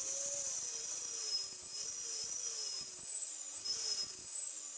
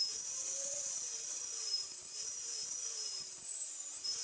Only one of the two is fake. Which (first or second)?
second